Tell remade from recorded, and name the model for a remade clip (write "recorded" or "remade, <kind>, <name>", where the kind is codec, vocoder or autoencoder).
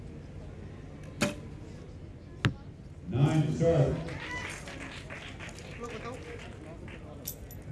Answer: recorded